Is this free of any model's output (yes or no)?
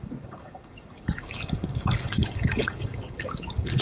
no